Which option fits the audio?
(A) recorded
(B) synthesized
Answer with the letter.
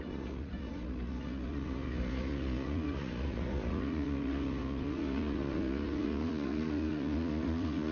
B